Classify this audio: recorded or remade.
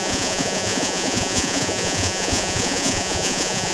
remade